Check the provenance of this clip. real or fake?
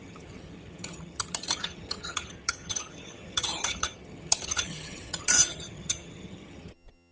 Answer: fake